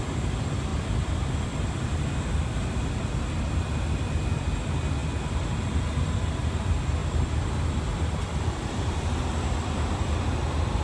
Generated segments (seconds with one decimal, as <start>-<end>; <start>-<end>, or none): 0.7-2.3; 5.0-5.9; 7.0-10.2